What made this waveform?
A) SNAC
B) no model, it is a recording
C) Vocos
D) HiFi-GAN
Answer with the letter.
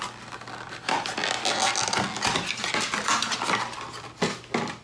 B